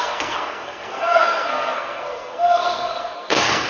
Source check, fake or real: fake